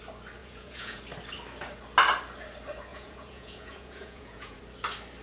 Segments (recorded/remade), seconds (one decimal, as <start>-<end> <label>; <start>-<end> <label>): 0.0-0.4 recorded; 0.4-1.0 remade; 1.0-2.9 recorded; 2.9-4.6 remade; 4.6-5.2 recorded